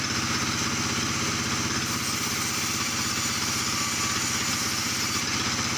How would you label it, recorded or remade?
recorded